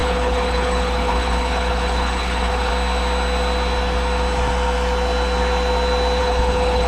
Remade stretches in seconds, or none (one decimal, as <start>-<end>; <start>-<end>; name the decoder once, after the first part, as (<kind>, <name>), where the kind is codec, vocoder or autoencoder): 0.0-2.7 (codec, HILCodec); 6.2-6.9